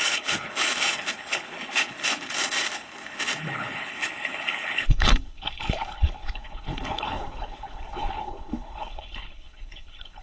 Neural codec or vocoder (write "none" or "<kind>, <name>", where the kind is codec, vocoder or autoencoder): codec, HILCodec